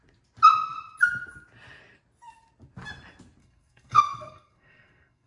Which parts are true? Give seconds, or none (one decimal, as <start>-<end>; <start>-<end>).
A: 0.0-3.4